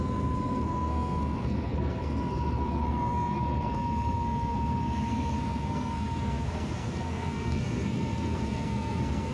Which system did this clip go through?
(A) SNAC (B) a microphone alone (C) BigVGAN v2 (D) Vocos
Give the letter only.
A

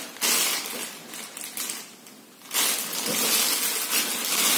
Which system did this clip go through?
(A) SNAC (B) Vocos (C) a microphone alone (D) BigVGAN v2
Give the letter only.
C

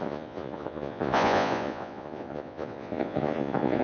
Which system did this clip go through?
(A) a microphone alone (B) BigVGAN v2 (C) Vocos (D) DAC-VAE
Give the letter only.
C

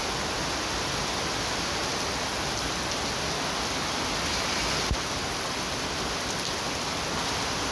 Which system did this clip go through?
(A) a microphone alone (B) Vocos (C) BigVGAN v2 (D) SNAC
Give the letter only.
A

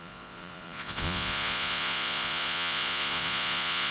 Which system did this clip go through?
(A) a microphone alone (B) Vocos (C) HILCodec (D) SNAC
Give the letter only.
B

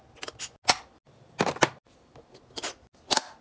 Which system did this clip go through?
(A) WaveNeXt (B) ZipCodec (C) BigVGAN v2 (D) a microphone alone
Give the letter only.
D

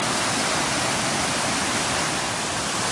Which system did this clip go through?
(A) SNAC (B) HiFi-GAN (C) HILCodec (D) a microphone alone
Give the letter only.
D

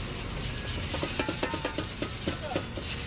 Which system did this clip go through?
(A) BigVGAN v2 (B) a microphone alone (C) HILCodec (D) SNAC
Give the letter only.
B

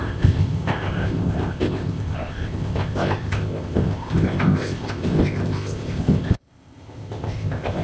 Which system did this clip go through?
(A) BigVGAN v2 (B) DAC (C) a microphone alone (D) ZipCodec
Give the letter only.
D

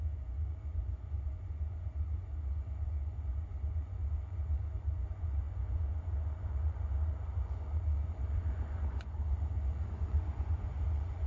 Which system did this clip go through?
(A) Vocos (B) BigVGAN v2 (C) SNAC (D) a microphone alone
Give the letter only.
A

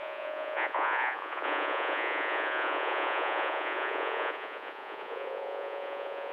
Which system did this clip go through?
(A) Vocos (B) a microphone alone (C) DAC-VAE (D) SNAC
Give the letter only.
A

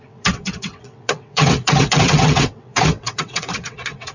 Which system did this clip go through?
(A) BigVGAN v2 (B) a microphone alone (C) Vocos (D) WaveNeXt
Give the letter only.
D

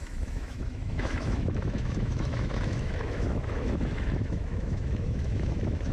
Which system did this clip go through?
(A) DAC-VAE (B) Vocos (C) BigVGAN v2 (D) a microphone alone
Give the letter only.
A